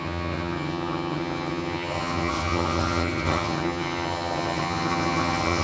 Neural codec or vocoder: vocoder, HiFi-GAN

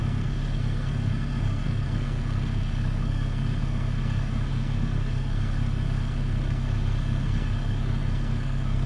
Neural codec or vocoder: codec, SNAC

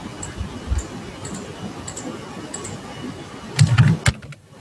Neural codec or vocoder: none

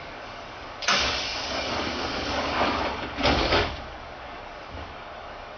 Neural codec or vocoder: codec, DAC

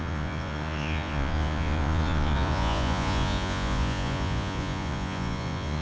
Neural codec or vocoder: vocoder, Vocos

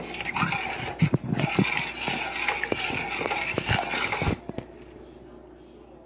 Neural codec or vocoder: none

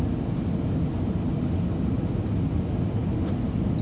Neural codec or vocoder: none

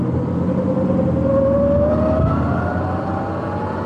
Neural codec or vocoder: none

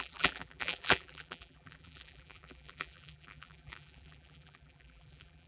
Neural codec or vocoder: vocoder, BigVGAN v2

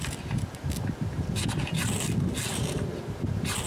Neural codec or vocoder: none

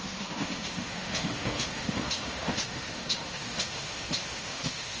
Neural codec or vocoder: autoencoder, DAC-VAE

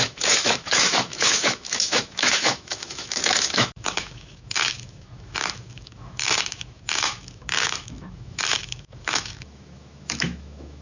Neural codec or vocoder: autoencoder, DAC-VAE